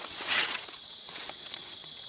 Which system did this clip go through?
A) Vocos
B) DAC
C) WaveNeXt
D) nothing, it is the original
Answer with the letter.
C